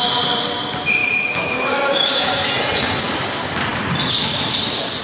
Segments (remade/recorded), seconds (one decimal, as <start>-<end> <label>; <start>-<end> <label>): 0.0-1.0 recorded; 1.0-2.5 remade; 2.5-5.0 recorded